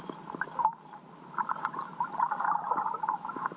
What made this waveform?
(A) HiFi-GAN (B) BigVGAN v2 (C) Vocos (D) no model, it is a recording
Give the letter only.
D